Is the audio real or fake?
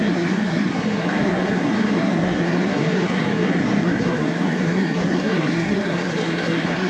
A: fake